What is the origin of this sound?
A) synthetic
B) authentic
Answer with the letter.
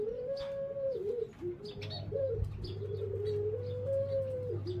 B